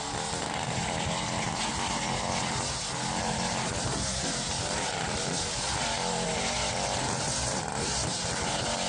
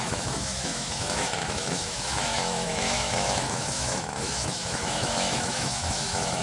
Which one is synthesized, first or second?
second